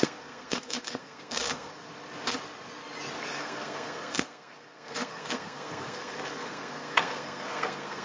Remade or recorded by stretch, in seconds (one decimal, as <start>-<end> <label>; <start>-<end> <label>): 0.0-1.9 remade; 1.9-3.2 recorded; 3.2-8.0 remade

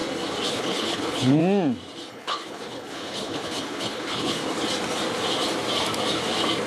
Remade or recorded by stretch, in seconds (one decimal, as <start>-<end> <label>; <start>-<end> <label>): 0.0-0.5 recorded; 0.5-1.4 remade; 1.4-2.1 recorded; 2.1-4.4 remade; 4.4-6.7 recorded

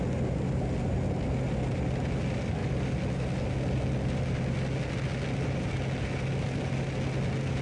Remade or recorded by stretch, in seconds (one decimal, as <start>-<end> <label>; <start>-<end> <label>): 0.0-7.6 recorded

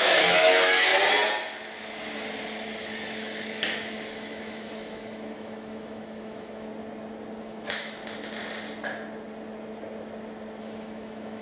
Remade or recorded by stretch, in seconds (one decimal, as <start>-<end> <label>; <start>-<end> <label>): 0.0-0.9 remade; 0.9-2.8 recorded; 2.8-6.7 remade; 6.7-7.4 recorded; 7.4-8.0 remade; 8.0-10.6 recorded; 10.6-11.4 remade

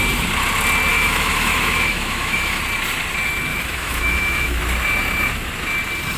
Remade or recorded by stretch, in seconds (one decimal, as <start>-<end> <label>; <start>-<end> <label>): 0.0-0.9 recorded; 0.9-2.6 remade; 2.6-3.5 recorded; 3.5-4.6 remade; 4.6-6.2 recorded